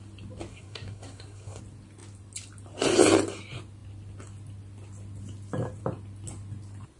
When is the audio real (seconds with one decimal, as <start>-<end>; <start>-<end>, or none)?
0.0-0.5; 1.6-7.0